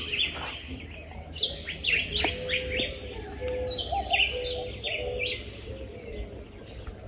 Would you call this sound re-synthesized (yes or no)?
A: no